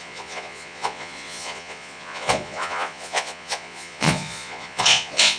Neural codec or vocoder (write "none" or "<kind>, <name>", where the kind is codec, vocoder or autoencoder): vocoder, Vocos